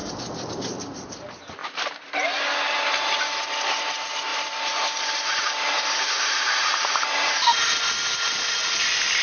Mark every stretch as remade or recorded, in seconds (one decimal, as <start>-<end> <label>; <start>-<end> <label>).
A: 0.0-1.6 recorded; 1.6-2.4 remade; 2.4-4.3 recorded; 4.3-7.0 remade; 7.0-9.2 recorded